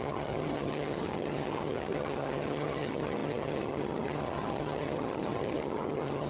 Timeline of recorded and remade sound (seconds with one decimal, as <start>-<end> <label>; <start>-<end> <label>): 0.0-6.3 remade